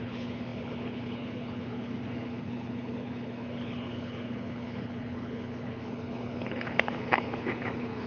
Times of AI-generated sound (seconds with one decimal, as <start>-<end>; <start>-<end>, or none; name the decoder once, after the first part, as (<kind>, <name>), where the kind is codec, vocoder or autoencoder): 0.0-8.1 (codec, HILCodec)